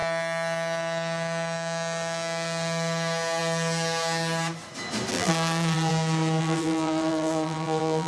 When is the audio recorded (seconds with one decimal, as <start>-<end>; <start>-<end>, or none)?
0.0-5.1; 5.9-6.4